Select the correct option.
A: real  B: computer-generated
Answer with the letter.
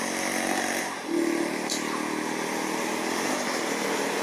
A